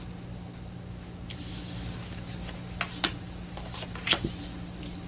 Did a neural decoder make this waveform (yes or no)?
no